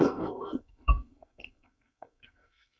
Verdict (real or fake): fake